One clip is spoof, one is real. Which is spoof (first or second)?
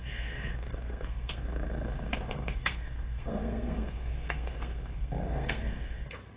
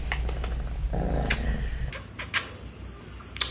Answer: first